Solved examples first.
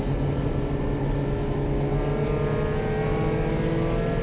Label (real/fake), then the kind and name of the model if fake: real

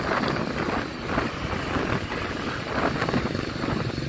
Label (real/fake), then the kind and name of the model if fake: real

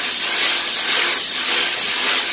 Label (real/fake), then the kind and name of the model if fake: real